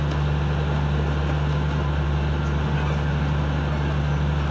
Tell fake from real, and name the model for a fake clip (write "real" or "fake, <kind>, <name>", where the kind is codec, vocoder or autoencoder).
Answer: real